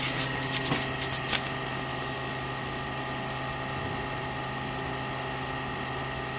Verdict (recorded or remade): recorded